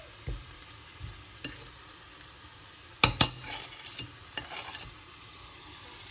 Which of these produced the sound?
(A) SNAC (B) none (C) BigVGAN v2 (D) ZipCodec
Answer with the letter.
B